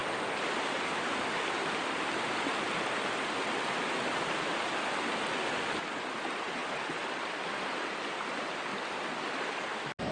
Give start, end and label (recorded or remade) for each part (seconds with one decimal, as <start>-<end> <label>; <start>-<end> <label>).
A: 0.0-10.1 recorded

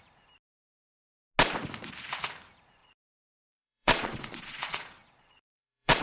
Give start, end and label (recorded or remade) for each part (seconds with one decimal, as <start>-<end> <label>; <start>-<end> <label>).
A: 0.0-2.8 recorded; 2.8-6.0 remade

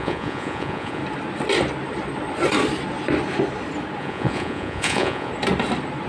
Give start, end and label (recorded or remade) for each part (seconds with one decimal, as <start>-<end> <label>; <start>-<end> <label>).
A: 0.0-1.0 remade; 1.0-4.0 recorded; 4.0-5.3 remade; 5.3-6.1 recorded

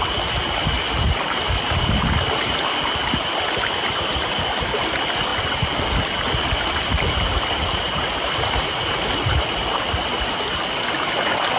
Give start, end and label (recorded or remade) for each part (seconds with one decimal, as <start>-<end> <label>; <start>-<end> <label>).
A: 0.0-11.6 recorded